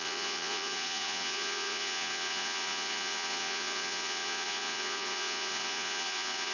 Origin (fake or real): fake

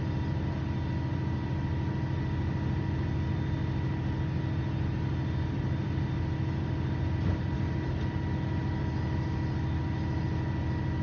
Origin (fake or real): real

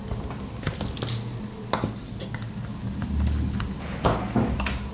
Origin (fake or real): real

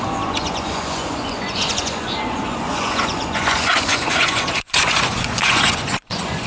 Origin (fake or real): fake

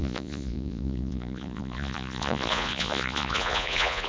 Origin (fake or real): fake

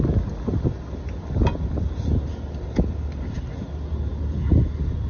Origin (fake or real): real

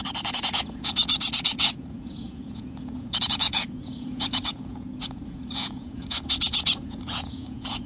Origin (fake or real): fake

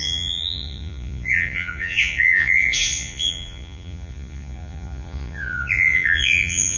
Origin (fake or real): fake